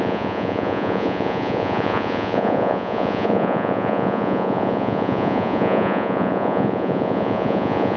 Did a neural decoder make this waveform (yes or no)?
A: yes